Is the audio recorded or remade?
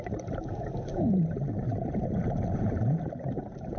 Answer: remade